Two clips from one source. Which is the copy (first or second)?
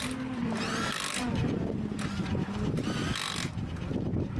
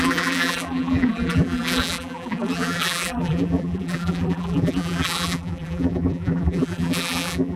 second